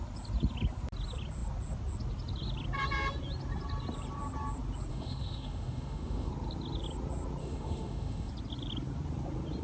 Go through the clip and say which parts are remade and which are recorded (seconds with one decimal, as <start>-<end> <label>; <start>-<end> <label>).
0.0-4.9 recorded; 4.9-6.3 remade; 6.3-7.4 recorded; 7.4-8.3 remade; 8.3-9.6 recorded